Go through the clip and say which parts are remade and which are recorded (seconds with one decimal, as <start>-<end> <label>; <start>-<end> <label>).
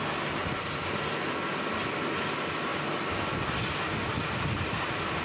0.0-5.2 recorded